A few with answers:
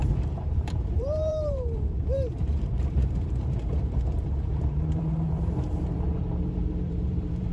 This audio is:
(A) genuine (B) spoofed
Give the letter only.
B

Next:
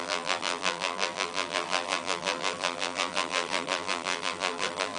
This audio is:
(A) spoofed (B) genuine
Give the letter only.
A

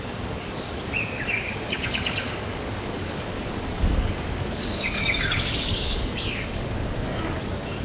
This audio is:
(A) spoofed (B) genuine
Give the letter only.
A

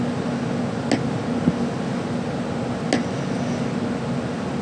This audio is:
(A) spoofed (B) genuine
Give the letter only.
B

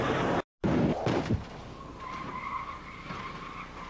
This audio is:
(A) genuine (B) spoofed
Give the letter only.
A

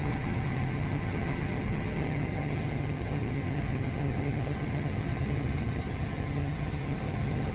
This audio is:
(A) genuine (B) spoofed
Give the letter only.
B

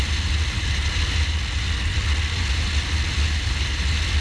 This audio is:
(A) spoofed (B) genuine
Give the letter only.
B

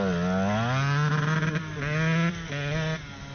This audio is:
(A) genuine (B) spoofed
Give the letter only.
A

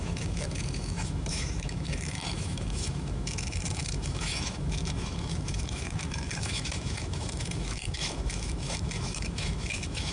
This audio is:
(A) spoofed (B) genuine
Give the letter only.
A